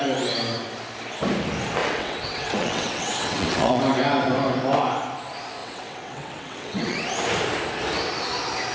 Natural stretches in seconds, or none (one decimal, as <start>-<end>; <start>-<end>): 0.0-1.8; 3.8-5.6; 7.1-8.7